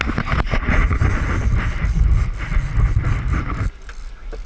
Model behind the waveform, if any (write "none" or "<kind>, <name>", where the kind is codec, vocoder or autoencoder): none